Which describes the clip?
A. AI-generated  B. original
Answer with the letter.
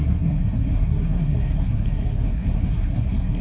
A